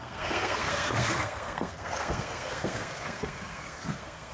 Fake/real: fake